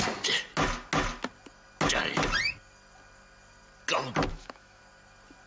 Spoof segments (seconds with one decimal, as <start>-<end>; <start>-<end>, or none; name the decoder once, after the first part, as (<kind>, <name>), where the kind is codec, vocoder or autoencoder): 4.3-4.8 (autoencoder, DAC-VAE)